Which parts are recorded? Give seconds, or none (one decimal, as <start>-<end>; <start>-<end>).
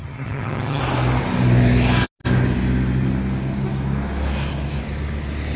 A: 0.8-5.6